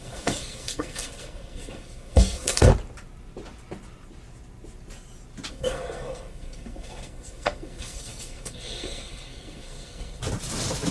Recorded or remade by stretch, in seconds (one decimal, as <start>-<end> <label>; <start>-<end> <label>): 0.0-2.7 remade; 2.7-5.5 recorded; 5.5-10.2 remade; 10.2-10.9 recorded